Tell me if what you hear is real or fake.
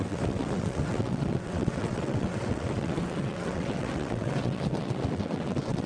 fake